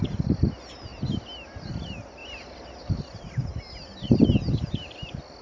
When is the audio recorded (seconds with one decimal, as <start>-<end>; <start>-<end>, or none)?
0.0-2.2; 3.0-5.4

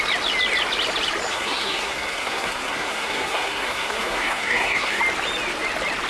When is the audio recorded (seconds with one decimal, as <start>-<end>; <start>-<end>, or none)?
0.0-1.3; 5.0-6.1

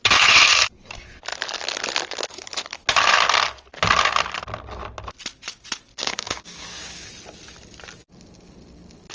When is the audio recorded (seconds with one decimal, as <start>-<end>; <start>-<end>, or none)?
0.0-5.9; 7.1-9.1